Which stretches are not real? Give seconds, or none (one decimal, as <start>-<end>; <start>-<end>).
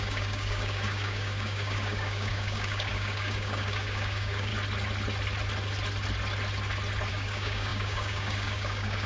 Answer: 0.0-4.5; 7.1-9.1